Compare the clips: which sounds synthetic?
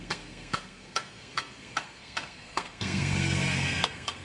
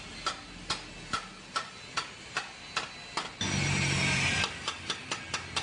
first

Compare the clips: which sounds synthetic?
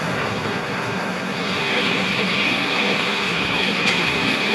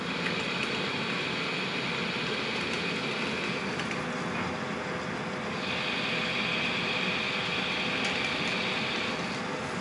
first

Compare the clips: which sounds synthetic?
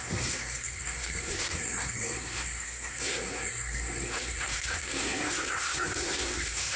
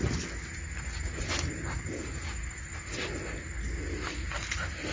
first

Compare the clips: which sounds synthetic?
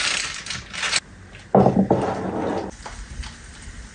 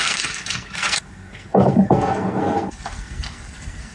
second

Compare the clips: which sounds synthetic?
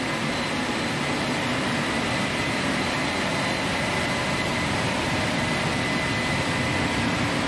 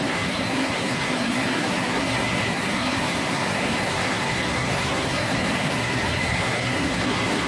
second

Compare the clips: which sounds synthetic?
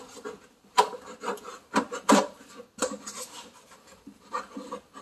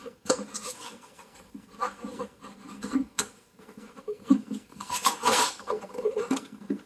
second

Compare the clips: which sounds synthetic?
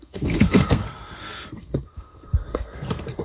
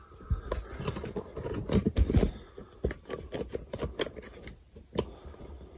first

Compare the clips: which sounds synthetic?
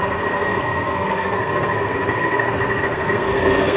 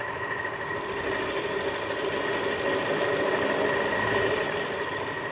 first